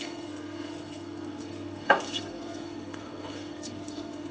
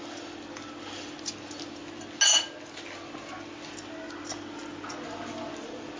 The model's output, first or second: first